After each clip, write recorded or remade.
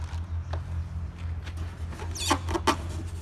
recorded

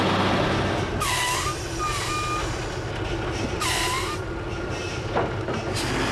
recorded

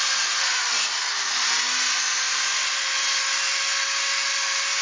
recorded